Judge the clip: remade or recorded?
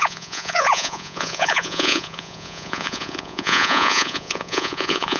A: remade